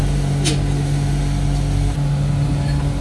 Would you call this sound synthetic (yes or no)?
no